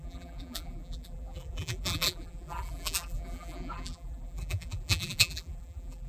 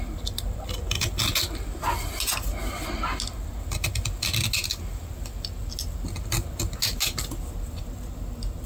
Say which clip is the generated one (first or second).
first